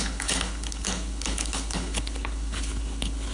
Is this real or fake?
fake